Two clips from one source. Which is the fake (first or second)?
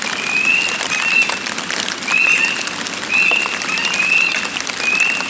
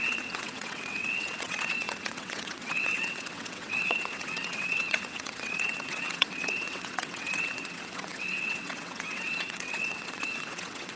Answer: second